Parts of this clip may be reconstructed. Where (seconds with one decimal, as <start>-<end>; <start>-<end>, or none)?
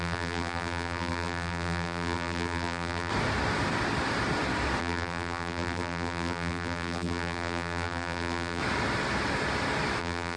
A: 0.0-3.1; 4.8-8.6; 10.0-10.4